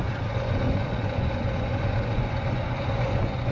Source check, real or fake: fake